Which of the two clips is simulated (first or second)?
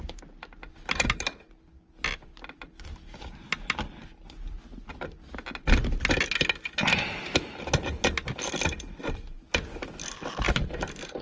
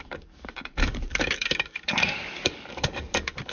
second